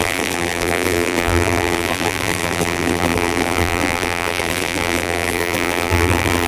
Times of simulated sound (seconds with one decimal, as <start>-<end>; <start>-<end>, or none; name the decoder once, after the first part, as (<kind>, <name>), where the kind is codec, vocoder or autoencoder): 0.0-6.5 (vocoder, BigVGAN v2)